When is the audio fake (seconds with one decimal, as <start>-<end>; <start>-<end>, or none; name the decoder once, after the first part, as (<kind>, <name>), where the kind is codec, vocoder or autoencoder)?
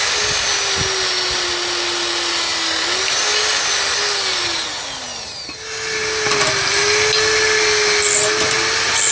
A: none